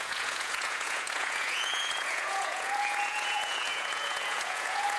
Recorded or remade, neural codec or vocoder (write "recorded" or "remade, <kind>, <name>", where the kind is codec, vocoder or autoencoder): remade, vocoder, Vocos